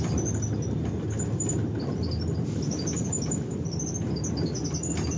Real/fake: real